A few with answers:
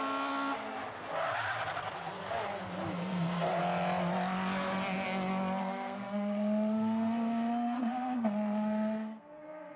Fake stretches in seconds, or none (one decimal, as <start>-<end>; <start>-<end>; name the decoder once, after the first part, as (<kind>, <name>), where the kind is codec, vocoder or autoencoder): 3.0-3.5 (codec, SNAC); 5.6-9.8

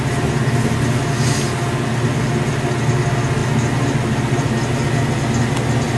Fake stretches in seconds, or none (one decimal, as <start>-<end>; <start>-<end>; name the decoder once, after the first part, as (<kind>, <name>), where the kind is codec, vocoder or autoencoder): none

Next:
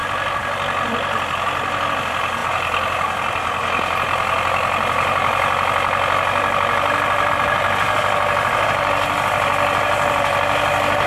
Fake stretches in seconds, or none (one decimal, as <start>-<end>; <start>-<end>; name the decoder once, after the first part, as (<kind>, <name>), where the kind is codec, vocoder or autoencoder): none

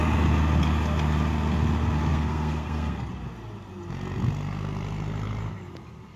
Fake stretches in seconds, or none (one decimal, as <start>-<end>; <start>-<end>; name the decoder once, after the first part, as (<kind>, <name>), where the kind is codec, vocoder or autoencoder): 2.1-3.1 (codec, SNAC)

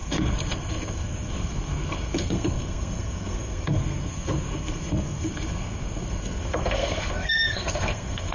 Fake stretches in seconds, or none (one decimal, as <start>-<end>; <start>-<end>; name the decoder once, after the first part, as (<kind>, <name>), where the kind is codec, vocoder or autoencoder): 0.0-8.3 (codec, SNAC)

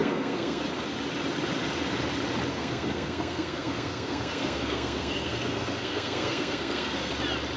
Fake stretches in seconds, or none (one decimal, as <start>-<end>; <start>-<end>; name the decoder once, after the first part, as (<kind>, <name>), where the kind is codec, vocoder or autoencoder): 0.0-0.6 (codec, SNAC); 2.5-7.1